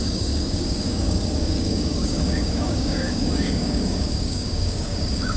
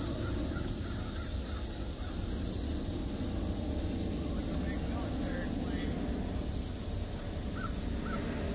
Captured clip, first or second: second